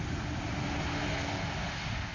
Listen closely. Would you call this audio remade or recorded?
recorded